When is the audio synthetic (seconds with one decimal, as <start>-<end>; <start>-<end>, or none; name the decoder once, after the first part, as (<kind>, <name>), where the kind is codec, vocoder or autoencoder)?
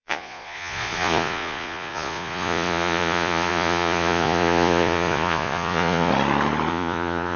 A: 0.0-6.1 (vocoder, Vocos); 6.7-7.4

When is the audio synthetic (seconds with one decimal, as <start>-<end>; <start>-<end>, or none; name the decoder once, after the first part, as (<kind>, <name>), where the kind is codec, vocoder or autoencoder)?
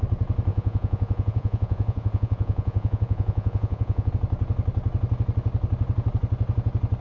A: 0.5-4.1 (vocoder, Vocos)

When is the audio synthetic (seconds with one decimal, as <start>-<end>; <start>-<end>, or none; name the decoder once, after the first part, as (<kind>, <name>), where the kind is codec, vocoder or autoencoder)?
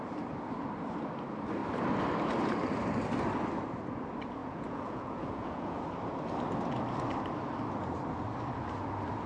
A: 4.4-5.8 (vocoder, Vocos)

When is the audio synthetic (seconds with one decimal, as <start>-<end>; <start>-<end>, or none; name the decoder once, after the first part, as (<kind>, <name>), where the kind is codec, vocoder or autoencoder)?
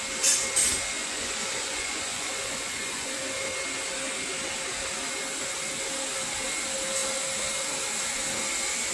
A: 1.0-3.2 (vocoder, Vocos)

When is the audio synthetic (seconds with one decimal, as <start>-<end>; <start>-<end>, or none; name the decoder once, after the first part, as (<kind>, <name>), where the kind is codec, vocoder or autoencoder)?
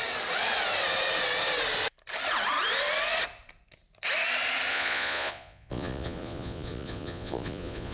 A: 4.7-7.9 (vocoder, Vocos)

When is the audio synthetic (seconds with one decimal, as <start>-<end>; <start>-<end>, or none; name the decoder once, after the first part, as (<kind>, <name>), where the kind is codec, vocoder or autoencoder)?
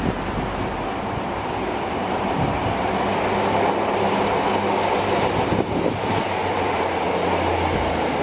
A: none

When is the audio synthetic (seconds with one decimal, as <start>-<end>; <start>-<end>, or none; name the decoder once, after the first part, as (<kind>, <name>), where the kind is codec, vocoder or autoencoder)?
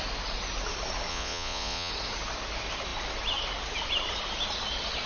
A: 1.1-1.9 (vocoder, Vocos)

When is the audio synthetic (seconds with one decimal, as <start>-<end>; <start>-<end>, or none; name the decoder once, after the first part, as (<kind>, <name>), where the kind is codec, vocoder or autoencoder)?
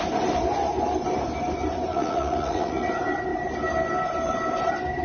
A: 1.9-2.9 (vocoder, Vocos)